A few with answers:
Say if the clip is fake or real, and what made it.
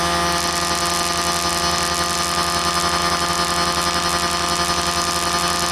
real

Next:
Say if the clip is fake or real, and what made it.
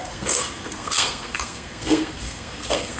fake, codec, SNAC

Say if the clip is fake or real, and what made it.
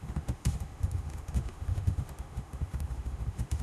fake, autoencoder, DAC-VAE